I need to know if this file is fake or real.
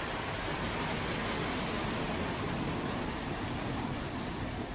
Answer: real